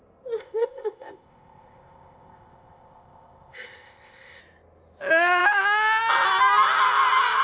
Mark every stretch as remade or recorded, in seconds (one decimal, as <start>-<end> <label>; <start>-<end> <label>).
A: 0.0-0.4 recorded; 0.4-4.4 remade; 4.4-7.4 recorded